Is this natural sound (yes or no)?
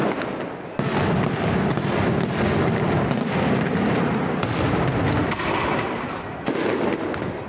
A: yes